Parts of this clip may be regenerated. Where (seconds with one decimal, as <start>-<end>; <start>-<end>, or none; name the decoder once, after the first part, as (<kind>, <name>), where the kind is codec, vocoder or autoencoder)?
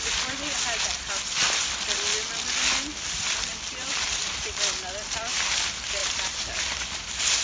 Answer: 3.5-4.4 (vocoder, BigVGAN v2); 6.0-6.5